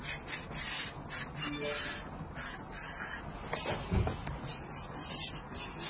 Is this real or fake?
real